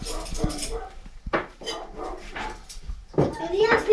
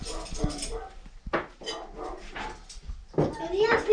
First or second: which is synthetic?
first